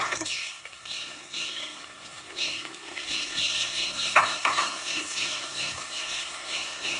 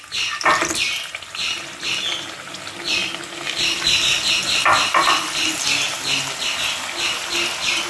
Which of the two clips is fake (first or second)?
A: first